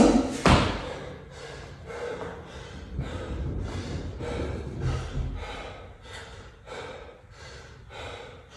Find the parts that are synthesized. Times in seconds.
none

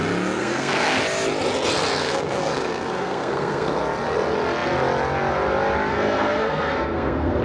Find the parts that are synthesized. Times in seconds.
0.4-1.0 (codec, SNAC); 2.0-3.8; 5.9-7.4

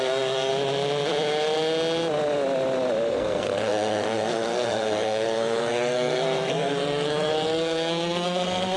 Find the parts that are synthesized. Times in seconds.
0.0-0.5 (codec, SNAC); 3.1-8.8

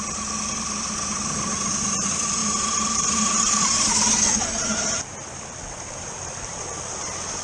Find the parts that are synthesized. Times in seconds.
none